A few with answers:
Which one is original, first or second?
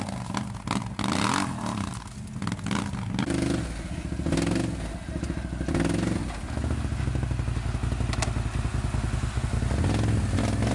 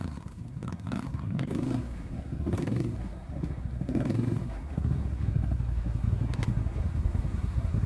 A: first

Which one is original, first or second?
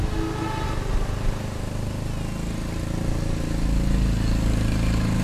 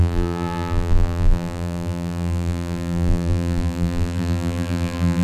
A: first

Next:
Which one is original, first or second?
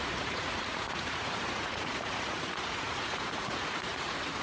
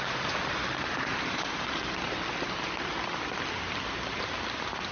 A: second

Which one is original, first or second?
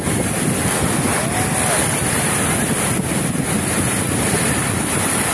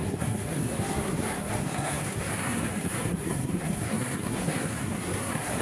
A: first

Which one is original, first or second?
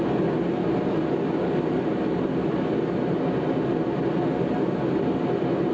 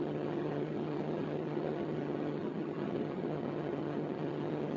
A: first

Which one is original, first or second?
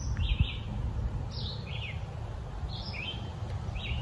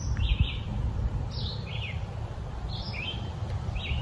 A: first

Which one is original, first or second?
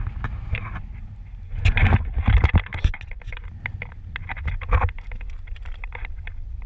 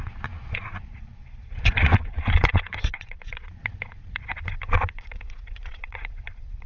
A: first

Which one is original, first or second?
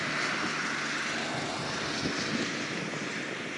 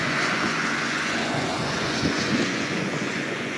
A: first